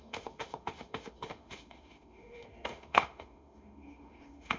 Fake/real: fake